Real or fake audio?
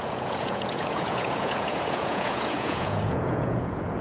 fake